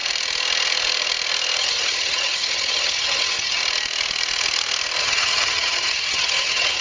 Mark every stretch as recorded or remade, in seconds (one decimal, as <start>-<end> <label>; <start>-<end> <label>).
0.0-1.6 recorded; 1.6-3.6 remade; 3.6-5.0 recorded; 5.0-6.8 remade